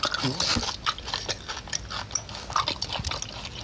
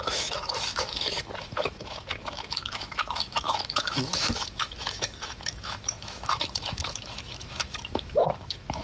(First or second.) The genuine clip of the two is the first